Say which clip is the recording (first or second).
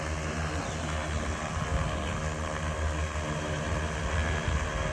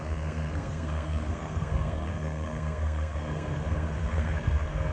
first